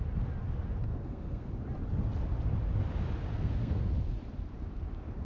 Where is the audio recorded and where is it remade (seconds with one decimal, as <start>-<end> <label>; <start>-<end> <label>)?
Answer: 0.0-0.9 recorded; 0.9-1.5 remade; 1.5-3.3 recorded; 3.3-3.9 remade; 3.9-5.2 recorded

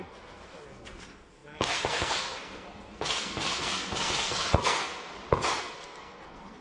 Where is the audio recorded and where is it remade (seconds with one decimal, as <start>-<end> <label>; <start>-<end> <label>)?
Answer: 0.0-5.1 remade; 5.1-5.6 recorded; 5.6-6.6 remade

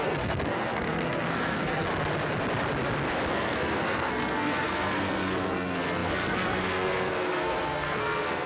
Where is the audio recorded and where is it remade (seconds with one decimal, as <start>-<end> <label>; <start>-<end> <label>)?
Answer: 0.0-1.9 remade; 1.9-3.3 recorded; 3.3-8.5 remade